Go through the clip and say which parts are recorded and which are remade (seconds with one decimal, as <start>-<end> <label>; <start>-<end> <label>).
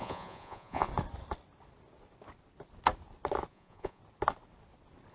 0.0-0.9 remade; 0.9-3.5 recorded; 3.5-4.0 remade; 4.0-5.1 recorded